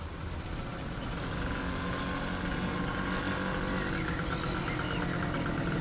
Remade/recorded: recorded